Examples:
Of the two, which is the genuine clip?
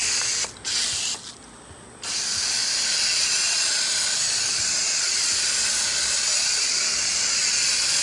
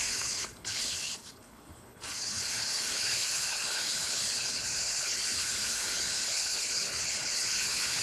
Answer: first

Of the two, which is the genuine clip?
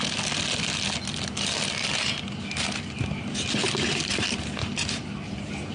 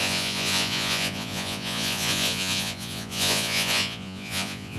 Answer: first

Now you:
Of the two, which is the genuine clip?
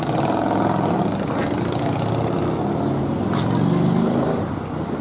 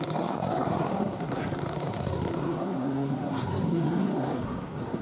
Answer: first